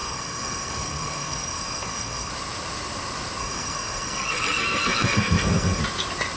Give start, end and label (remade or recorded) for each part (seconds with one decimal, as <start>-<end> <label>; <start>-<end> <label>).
0.0-2.3 remade; 2.3-3.4 recorded; 3.4-5.8 remade; 5.8-6.4 recorded